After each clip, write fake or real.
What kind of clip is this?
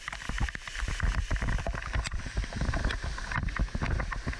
real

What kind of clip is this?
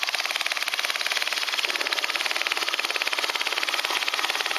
real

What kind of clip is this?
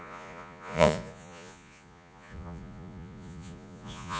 fake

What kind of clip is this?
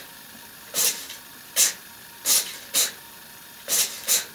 fake